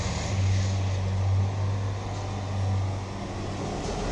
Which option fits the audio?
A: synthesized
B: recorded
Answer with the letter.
B